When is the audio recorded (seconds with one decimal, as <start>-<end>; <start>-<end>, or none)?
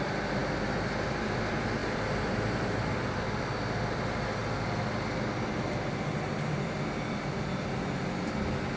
0.0-1.8; 3.4-8.8